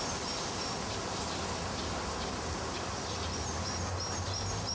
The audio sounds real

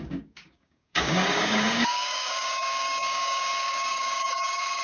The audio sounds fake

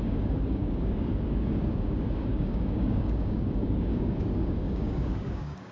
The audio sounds fake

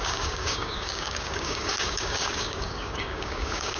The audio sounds fake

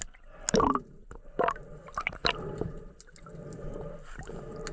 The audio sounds real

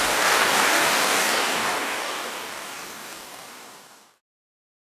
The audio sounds fake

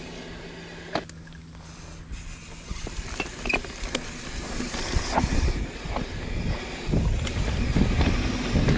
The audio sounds real